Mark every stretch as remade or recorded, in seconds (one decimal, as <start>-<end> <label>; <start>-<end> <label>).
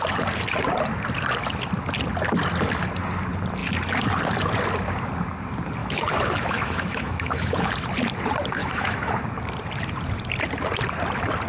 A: 0.0-5.8 recorded; 5.8-7.7 remade; 7.7-8.6 recorded; 8.6-9.2 remade; 9.2-11.5 recorded